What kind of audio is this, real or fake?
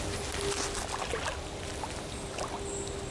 real